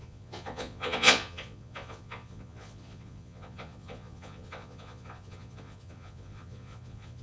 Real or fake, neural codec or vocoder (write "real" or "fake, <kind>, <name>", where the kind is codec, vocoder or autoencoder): fake, vocoder, Vocos